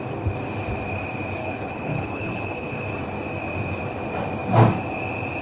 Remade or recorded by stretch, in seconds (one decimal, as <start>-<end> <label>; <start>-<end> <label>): 0.0-1.4 recorded; 1.4-2.9 remade; 2.9-5.4 recorded